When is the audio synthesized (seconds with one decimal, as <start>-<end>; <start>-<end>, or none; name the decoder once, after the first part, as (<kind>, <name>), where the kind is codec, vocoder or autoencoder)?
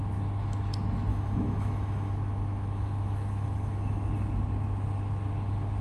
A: 1.1-4.1 (autoencoder, DAC-VAE)